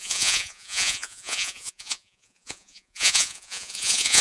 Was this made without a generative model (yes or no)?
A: no